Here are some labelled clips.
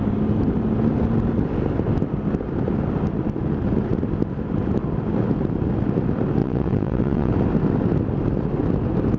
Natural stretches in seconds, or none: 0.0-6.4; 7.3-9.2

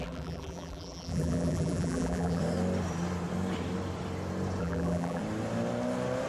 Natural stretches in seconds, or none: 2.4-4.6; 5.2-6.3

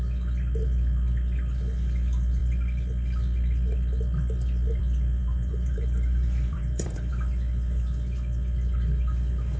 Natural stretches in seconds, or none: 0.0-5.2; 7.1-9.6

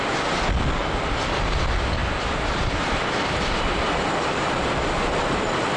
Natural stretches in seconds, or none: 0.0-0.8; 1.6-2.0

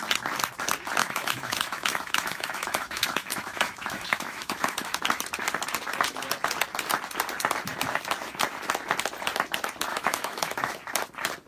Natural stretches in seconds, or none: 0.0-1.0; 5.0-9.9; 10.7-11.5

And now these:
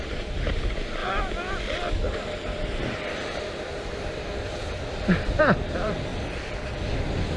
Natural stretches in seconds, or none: 1.0-5.4; 6.1-7.4

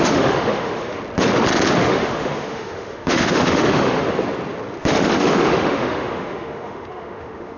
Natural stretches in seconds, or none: 1.0-1.8; 4.0-4.8